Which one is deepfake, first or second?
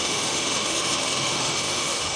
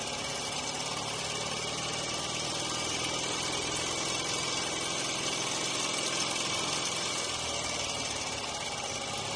first